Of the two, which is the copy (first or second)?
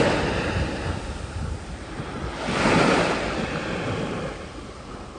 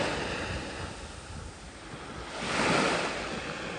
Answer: first